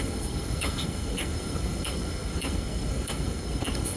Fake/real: fake